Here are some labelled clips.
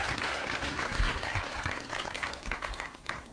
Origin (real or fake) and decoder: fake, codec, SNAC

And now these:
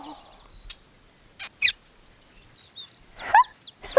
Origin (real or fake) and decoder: real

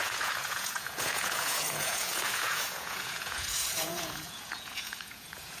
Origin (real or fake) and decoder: fake, vocoder, Vocos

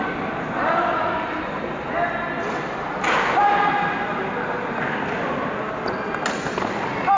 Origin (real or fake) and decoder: real